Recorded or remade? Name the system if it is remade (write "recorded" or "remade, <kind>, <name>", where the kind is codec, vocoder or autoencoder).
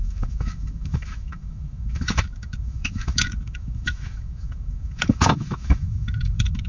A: remade, autoencoder, DAC-VAE